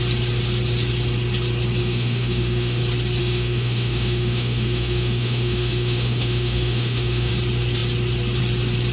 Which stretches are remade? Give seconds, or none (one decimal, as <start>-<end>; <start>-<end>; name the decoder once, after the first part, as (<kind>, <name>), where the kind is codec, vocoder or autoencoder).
1.8-2.8 (autoencoder, DAC-VAE); 3.2-7.3